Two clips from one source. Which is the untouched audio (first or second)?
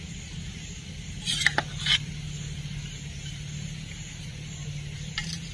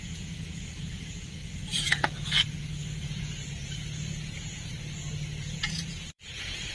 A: first